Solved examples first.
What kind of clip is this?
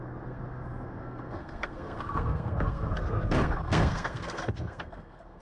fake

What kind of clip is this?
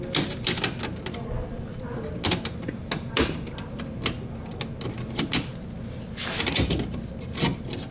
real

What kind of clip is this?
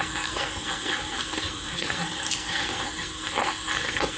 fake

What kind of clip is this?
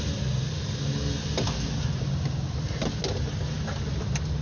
real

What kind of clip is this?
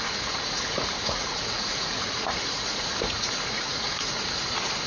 fake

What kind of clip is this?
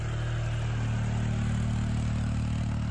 real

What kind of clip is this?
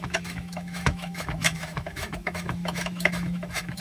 fake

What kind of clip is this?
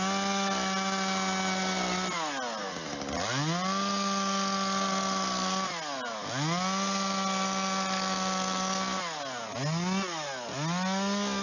real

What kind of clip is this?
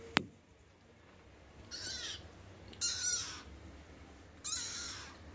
real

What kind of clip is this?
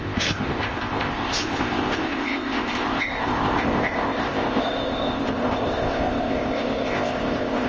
fake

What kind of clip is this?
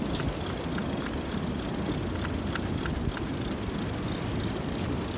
real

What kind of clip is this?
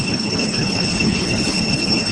fake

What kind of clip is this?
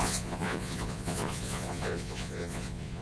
fake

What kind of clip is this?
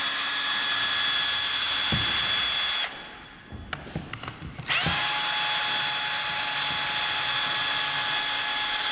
real